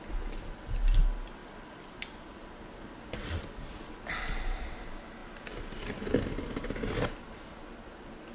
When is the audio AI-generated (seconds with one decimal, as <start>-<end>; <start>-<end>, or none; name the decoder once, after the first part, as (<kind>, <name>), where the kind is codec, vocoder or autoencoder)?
none